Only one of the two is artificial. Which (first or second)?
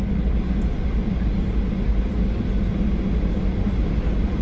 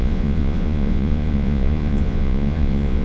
second